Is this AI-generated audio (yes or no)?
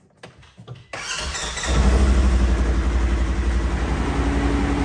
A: no